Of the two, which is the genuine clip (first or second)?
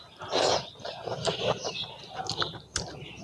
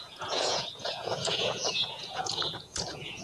first